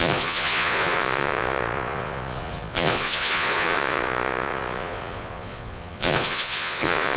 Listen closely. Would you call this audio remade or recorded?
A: remade